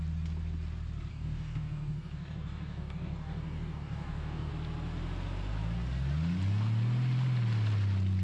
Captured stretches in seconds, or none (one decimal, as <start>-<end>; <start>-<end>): 0.0-1.1; 4.5-8.2